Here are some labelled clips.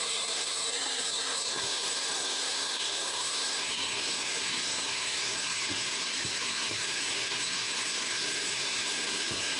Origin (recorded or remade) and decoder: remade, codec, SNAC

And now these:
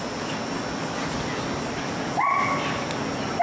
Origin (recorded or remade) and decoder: recorded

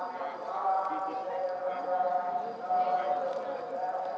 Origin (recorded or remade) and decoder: recorded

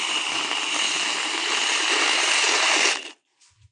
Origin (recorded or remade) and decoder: recorded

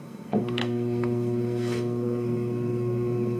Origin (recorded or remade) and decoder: remade, codec, SNAC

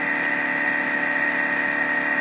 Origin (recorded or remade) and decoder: recorded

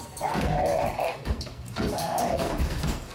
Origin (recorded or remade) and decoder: remade, codec, SNAC